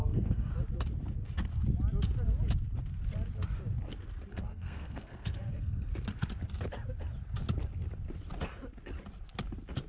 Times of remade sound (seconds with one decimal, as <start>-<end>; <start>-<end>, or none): 0.0-0.5; 4.3-5.9